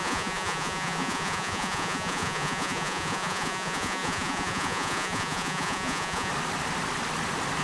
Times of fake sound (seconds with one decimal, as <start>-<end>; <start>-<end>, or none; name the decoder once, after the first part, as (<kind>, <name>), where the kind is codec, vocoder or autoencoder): 0.0-6.3 (vocoder, Vocos)